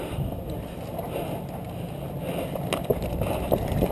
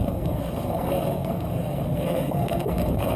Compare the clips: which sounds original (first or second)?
first